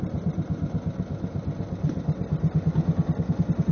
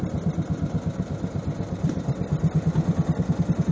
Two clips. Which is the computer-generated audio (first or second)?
second